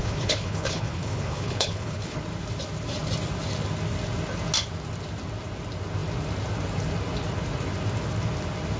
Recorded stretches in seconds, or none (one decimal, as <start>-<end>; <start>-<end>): 2.2-8.8